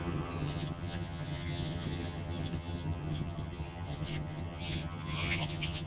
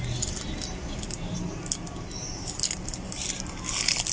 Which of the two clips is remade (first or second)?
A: first